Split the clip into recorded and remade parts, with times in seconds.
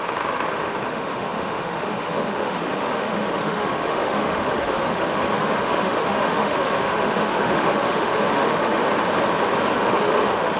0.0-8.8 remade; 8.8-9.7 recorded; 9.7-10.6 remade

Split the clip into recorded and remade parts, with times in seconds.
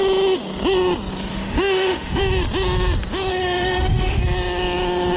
0.0-1.3 recorded; 1.3-2.2 remade; 2.2-3.3 recorded; 3.3-4.2 remade; 4.2-5.2 recorded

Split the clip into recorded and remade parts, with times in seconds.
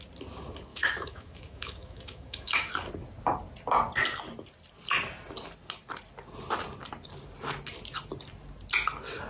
0.0-0.7 recorded; 0.7-2.7 remade; 2.7-9.3 recorded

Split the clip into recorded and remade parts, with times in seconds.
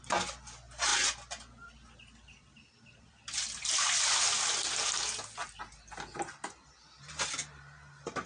0.0-8.3 recorded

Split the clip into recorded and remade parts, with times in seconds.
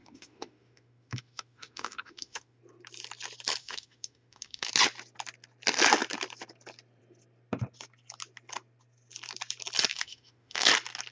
0.0-2.6 remade; 2.6-3.6 recorded; 3.6-4.7 remade; 4.7-9.9 recorded; 9.9-10.7 remade; 10.7-11.1 recorded